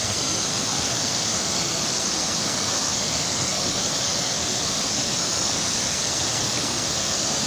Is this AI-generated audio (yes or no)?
yes